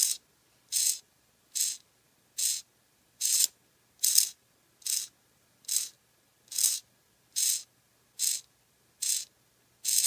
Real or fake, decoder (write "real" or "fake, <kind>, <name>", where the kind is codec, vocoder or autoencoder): real